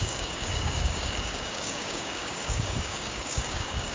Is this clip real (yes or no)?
no